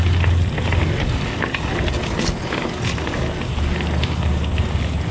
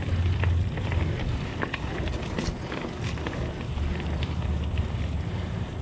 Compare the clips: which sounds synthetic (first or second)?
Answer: second